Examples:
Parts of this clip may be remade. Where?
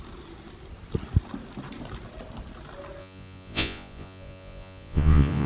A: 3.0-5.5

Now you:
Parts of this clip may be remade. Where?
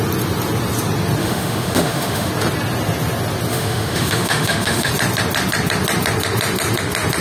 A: 1.2-2.3; 3.5-4.9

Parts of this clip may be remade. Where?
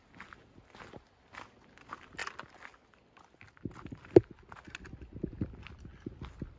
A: none